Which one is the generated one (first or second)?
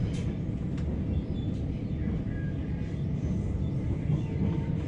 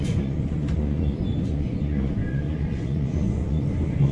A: second